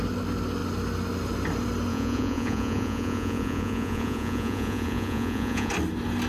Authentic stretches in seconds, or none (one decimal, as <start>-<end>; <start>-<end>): 0.0-1.9; 5.7-6.3